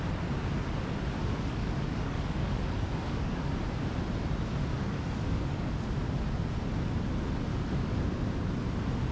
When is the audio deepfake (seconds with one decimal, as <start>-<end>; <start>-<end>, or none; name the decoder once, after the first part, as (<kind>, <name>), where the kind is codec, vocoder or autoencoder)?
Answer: 1.2-3.5 (codec, DAC); 4.7-5.7; 7.5-8.0